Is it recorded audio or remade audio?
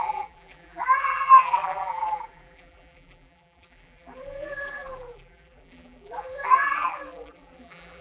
remade